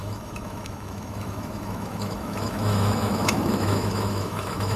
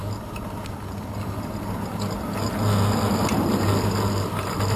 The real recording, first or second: second